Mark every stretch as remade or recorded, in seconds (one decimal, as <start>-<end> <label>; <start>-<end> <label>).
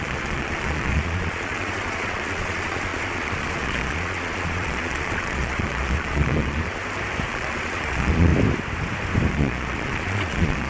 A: 0.0-6.8 remade; 6.8-7.3 recorded; 7.3-8.3 remade; 8.3-9.3 recorded; 9.3-10.7 remade